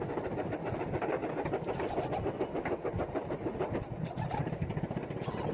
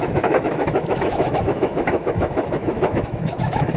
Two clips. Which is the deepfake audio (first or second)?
second